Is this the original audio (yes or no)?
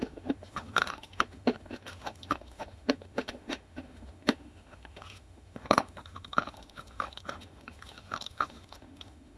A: no